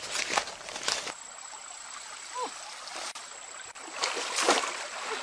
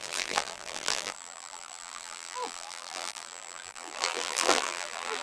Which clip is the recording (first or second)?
first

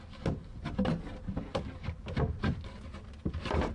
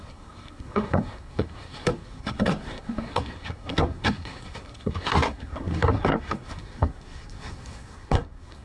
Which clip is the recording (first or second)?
first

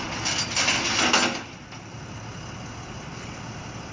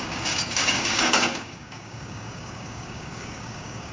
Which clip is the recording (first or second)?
first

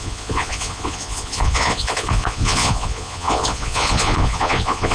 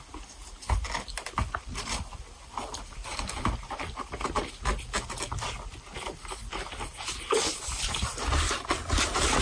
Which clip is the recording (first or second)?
second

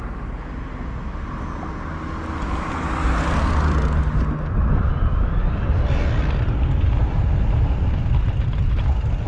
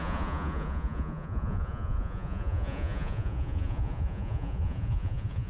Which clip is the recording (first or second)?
first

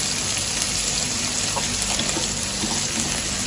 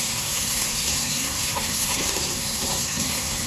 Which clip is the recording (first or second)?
first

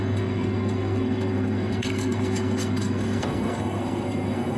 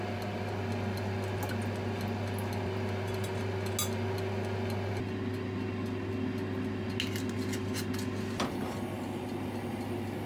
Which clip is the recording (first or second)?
second